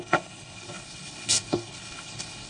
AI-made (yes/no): yes